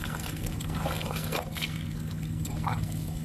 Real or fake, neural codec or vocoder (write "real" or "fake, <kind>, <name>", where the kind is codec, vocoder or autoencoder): fake, codec, SNAC